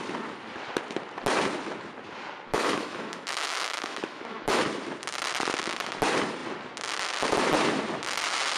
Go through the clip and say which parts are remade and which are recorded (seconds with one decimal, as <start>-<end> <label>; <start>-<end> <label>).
0.0-2.5 recorded; 2.5-4.6 remade; 4.6-8.6 recorded